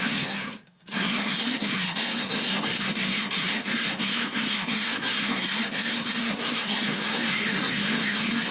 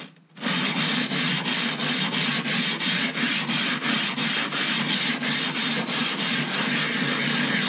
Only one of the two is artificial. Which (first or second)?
first